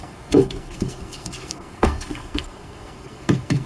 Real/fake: fake